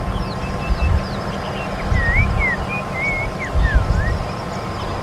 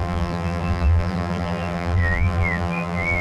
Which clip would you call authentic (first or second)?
first